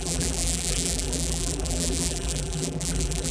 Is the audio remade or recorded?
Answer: remade